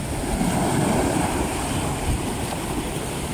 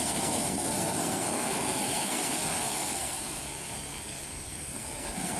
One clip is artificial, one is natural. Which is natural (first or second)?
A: first